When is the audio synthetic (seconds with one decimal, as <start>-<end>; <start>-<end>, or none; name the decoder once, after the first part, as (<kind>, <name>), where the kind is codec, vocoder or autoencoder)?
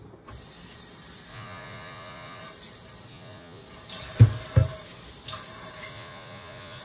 1.3-2.4 (vocoder, Vocos); 3.1-3.6; 5.9-6.8